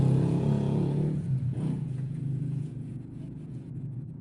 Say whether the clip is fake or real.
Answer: fake